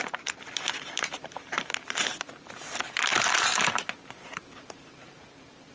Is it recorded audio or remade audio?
remade